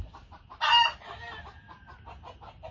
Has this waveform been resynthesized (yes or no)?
no